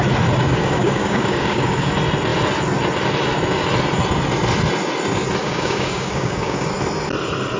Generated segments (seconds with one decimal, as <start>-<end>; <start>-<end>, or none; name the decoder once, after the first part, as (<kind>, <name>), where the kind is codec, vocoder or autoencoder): 0.4-1.9 (codec, DAC); 5.4-6.7